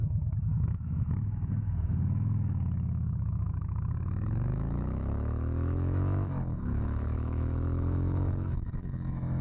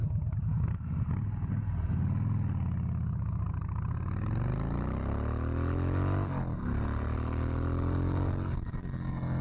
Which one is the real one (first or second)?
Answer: second